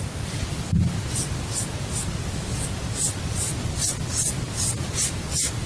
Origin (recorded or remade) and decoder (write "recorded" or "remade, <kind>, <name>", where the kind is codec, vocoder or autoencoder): recorded